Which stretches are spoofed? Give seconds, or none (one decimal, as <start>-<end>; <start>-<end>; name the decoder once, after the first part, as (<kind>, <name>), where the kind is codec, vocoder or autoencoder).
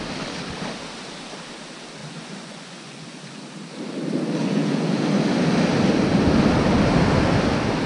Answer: 2.0-3.4 (vocoder, Vocos); 4.4-5.0